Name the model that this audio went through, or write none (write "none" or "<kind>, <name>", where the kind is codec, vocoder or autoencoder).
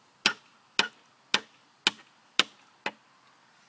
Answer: none